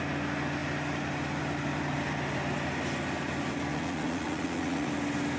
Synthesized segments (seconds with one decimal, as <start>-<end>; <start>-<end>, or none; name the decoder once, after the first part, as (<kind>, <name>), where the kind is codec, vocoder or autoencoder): 3.7-4.9 (vocoder, Vocos)